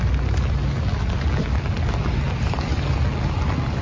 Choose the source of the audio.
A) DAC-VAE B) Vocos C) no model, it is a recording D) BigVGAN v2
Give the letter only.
C